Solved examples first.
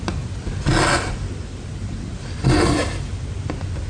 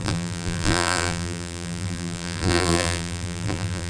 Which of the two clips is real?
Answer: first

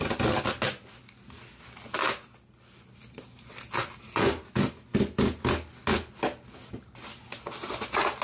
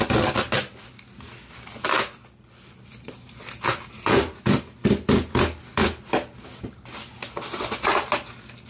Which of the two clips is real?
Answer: first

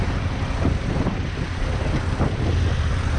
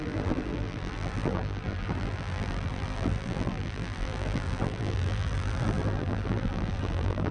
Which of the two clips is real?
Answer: first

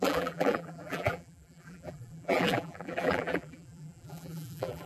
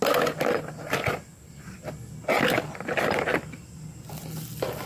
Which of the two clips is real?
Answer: second